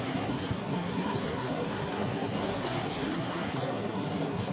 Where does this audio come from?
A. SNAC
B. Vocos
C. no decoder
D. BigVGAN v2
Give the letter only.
A